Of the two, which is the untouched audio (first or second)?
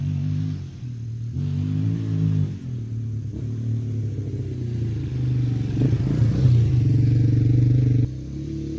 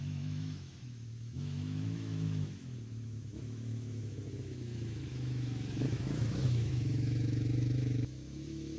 first